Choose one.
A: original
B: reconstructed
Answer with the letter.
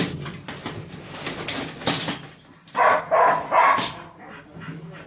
A